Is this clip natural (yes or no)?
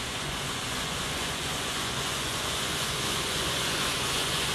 no